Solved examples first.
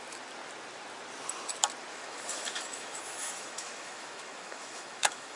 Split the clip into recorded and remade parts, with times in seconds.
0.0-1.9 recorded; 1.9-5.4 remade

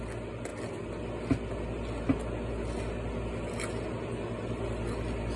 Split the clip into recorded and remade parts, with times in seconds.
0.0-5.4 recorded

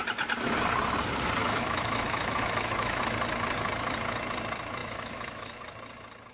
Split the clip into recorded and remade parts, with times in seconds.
0.0-1.4 recorded; 1.4-3.0 remade; 3.0-4.8 recorded; 4.8-5.6 remade; 5.6-6.3 recorded

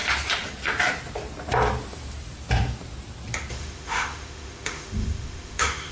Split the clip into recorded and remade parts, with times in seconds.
0.0-3.5 recorded; 3.5-5.9 remade

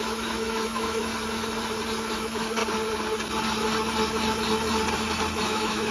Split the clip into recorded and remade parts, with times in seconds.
0.0-1.1 remade; 1.1-2.0 recorded; 2.0-2.6 remade; 2.6-5.4 recorded; 5.4-5.9 remade